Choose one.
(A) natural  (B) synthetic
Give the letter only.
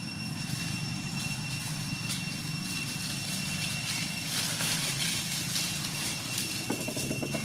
A